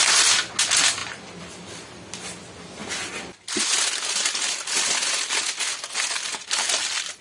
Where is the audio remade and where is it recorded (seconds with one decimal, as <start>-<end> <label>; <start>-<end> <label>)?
0.0-1.0 recorded; 1.0-2.1 remade; 2.1-7.2 recorded